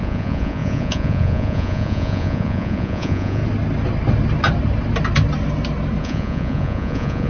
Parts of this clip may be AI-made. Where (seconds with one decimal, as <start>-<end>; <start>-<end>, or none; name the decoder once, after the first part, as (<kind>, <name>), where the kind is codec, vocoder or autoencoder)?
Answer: 0.0-3.4 (vocoder, Vocos); 6.0-7.3

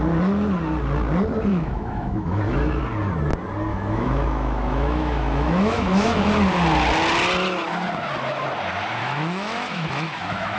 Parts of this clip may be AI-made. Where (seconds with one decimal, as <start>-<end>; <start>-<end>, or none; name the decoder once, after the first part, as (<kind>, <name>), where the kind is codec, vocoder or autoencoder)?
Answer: 1.5-2.8 (autoencoder, DAC-VAE); 3.7-6.2; 9.0-10.6

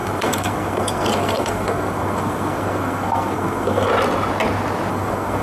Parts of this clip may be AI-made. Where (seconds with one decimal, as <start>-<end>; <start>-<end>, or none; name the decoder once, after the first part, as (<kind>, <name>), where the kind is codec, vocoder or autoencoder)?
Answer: 0.0-3.9 (codec, SNAC); 4.9-5.4

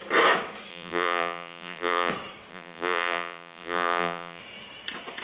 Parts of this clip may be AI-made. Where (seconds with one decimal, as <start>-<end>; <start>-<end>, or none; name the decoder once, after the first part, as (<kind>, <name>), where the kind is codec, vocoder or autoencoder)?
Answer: 0.7-2.1 (vocoder, BigVGAN v2); 2.5-4.4

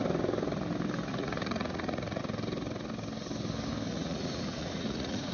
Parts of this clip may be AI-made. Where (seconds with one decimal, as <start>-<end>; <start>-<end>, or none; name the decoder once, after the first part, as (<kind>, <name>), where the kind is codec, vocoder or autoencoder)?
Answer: 1.1-2.2 (vocoder, Vocos); 3.9-5.3

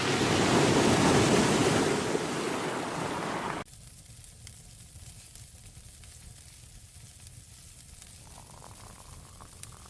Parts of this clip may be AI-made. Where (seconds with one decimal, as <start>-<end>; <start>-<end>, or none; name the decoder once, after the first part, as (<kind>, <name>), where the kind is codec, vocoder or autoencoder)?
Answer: none

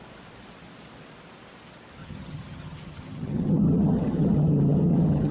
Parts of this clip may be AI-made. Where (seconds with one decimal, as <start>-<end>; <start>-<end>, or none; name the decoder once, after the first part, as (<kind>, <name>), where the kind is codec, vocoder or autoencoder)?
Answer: 2.0-5.3 (vocoder, HiFi-GAN)